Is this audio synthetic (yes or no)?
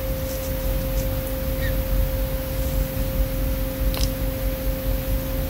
no